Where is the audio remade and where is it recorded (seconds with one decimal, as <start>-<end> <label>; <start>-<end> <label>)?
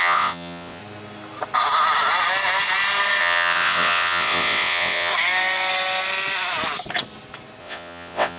0.0-0.8 remade; 0.8-3.2 recorded; 3.2-5.1 remade; 5.1-7.6 recorded; 7.6-8.4 remade